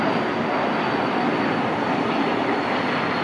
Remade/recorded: recorded